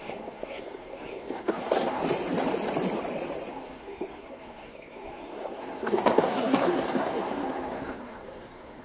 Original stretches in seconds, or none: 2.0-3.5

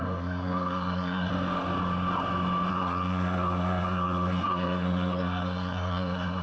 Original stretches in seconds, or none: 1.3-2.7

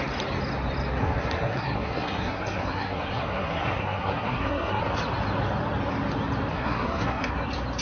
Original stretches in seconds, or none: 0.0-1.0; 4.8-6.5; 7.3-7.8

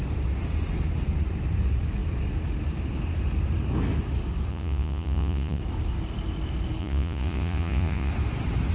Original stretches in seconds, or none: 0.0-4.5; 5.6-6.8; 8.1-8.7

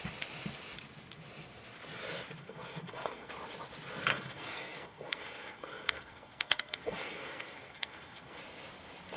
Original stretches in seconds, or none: 0.0-2.4; 3.3-4.1; 8.4-9.2